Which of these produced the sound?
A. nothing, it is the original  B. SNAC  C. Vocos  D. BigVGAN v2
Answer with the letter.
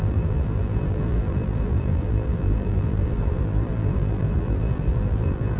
D